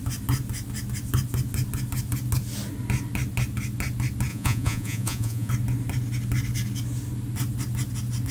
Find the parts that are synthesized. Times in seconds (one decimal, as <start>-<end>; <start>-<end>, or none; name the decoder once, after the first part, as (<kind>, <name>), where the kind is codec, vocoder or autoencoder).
4.3-5.5 (vocoder, Vocos)